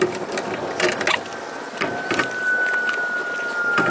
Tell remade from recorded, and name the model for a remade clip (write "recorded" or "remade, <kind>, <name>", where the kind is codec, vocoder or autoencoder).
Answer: recorded